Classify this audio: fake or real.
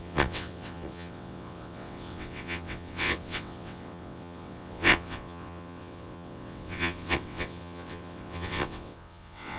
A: fake